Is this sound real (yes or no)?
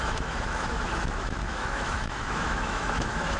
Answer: no